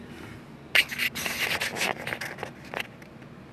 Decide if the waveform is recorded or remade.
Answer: recorded